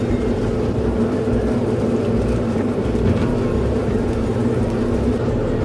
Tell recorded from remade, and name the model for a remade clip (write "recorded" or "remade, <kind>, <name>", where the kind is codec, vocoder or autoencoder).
remade, vocoder, BigVGAN v2